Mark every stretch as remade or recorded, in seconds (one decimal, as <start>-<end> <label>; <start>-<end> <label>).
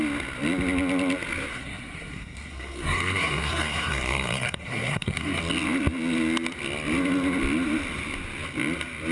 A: 0.0-1.5 recorded; 1.5-5.4 remade; 5.4-9.1 recorded